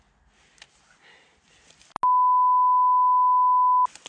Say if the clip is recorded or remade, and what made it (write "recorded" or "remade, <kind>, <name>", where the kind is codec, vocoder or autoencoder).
recorded